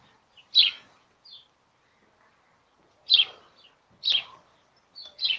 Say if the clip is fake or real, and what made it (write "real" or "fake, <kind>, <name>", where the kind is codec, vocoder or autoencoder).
real